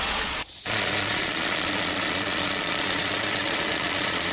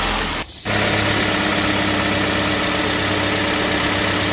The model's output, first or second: first